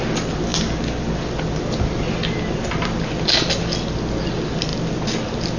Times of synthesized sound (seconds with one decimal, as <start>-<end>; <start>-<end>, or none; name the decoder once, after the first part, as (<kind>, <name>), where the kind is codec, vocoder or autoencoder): none